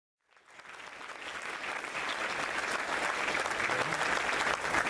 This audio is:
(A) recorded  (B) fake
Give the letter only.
A